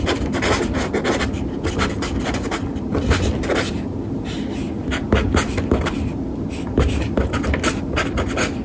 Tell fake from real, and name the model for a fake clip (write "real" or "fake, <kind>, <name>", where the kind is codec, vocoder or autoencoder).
real